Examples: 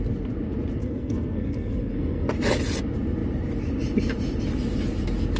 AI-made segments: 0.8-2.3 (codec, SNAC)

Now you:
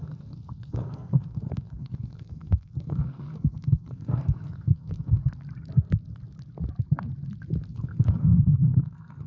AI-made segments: 0.0-5.2 (codec, SNAC); 7.7-9.3

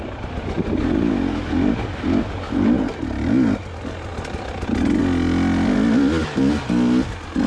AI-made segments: none